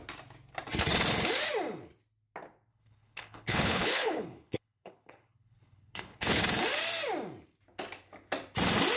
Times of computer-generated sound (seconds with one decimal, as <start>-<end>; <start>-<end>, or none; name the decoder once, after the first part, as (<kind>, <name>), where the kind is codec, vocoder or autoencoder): 2.7-6.4 (codec, HILCodec)